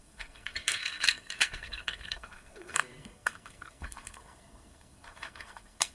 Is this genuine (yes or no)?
no